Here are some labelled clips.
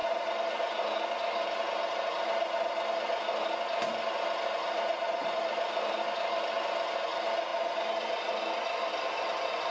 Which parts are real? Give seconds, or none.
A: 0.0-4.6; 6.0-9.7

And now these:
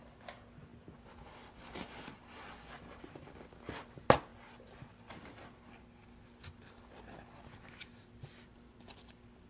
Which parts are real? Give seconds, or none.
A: 0.0-9.5

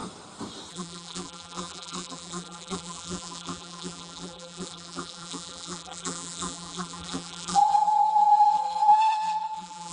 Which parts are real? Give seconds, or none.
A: 0.0-0.7

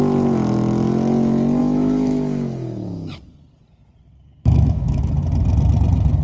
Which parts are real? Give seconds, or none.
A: 0.0-1.6; 3.1-4.3; 5.1-6.2

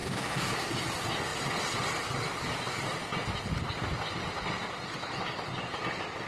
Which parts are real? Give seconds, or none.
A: 0.5-6.3

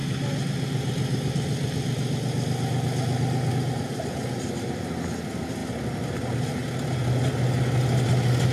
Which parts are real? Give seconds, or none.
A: 0.0-8.5